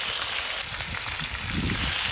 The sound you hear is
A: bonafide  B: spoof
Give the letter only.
A